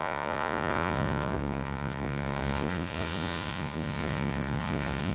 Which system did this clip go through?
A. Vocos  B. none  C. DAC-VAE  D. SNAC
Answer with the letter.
A